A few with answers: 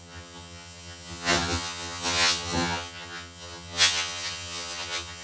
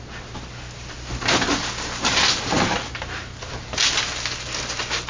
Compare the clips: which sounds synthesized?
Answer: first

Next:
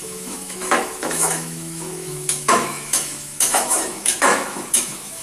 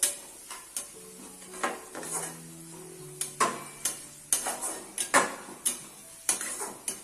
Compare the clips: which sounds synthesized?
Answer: first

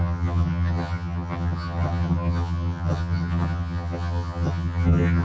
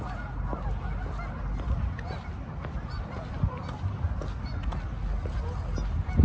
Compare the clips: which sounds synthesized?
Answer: first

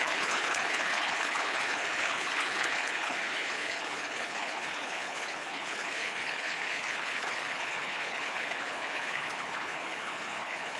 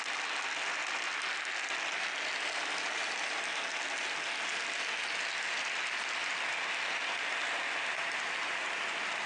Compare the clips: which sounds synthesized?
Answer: first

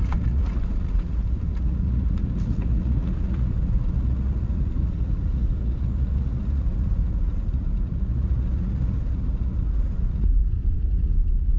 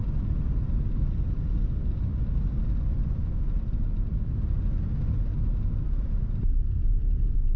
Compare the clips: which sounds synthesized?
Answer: first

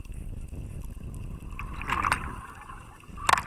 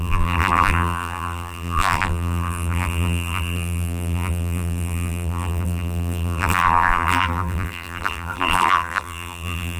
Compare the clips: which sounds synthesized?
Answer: second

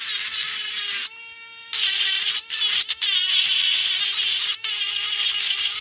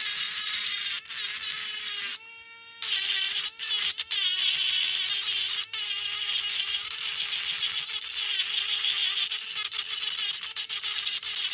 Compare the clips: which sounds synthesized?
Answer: first